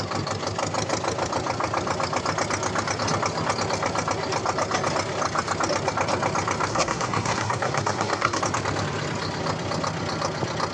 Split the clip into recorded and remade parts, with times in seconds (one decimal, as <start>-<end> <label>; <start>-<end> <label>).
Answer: 0.0-6.7 recorded; 6.7-8.4 remade; 8.4-10.7 recorded